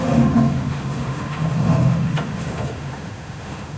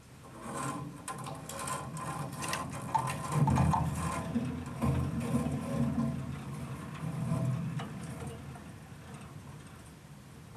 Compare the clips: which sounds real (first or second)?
second